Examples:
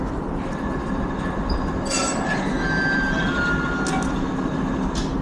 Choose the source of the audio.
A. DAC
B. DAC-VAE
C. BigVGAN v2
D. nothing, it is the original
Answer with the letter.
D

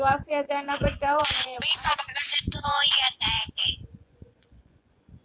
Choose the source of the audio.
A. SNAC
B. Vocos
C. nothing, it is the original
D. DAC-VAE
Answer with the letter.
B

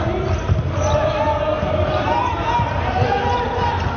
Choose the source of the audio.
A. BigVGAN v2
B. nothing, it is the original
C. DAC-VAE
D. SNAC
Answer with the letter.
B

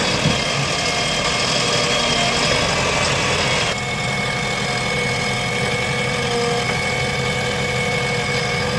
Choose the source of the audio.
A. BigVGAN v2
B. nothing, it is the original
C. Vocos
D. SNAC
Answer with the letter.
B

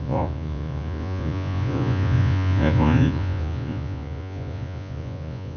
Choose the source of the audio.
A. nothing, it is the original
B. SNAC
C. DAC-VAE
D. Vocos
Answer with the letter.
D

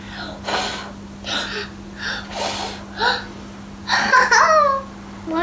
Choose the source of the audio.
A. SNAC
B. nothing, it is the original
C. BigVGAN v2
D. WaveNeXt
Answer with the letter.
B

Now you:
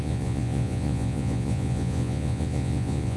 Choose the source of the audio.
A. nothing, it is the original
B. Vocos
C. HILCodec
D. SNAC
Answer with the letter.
B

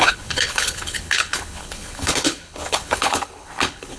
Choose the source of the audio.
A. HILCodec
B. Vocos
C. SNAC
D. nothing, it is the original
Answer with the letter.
A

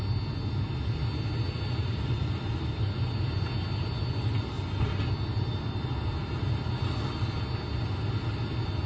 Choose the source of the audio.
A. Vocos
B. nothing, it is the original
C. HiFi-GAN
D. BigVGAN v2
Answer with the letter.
B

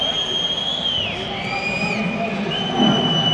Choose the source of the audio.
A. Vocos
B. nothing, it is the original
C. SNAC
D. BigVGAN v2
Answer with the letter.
B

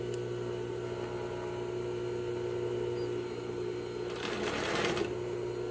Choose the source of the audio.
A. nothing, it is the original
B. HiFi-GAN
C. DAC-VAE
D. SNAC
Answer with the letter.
A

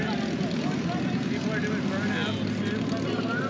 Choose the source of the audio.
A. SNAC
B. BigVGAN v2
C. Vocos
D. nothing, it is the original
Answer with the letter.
D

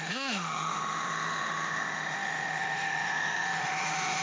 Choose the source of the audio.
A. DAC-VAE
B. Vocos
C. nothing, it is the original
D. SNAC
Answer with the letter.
A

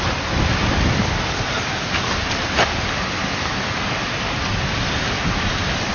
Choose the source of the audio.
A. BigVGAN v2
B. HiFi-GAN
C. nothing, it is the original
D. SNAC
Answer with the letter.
C